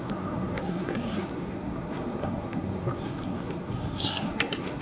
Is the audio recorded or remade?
remade